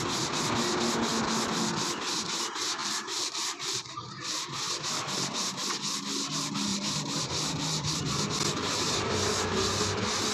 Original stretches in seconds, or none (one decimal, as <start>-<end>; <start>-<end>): 0.0-2.8; 4.4-6.7; 8.0-10.3